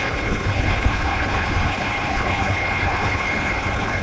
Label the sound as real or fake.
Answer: fake